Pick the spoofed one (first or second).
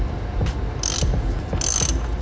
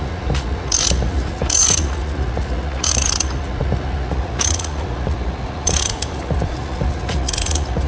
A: second